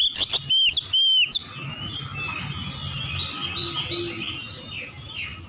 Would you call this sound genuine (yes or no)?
yes